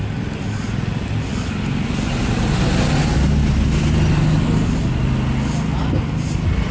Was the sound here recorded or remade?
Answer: recorded